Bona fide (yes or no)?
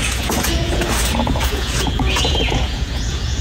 no